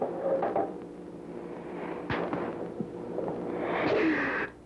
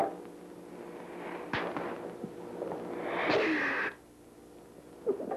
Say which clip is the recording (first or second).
second